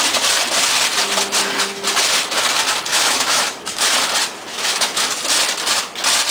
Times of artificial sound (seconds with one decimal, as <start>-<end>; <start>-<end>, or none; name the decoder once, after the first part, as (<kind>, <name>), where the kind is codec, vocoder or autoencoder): 2.9-3.9 (autoencoder, DAC-VAE); 4.5-5.1